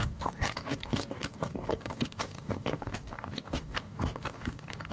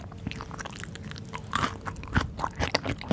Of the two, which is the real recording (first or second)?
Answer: second